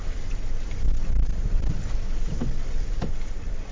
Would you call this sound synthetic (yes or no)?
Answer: no